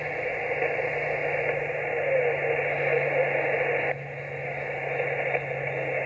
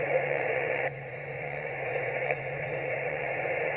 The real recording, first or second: first